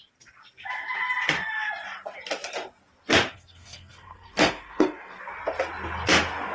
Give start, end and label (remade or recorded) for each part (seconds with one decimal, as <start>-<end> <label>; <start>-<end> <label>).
0.0-3.3 recorded; 3.3-5.2 remade; 5.2-6.5 recorded